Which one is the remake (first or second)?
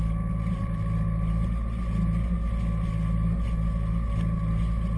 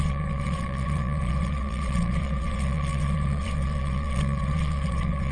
second